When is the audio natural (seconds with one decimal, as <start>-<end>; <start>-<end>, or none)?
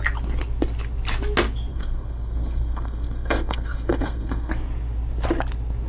0.0-1.7; 4.5-5.9